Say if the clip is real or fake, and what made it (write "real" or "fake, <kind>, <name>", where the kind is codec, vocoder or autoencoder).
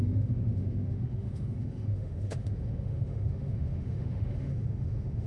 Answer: fake, autoencoder, DAC-VAE